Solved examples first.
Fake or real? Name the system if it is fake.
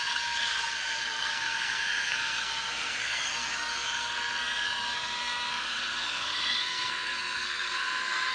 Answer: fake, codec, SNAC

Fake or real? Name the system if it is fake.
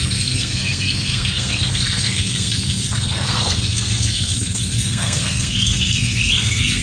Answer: fake, codec, SNAC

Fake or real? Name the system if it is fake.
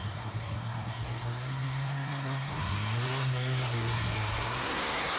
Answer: fake, codec, SNAC